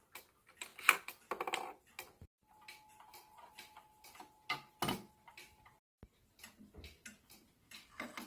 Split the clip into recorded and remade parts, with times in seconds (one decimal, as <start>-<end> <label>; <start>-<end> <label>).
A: 0.0-8.3 recorded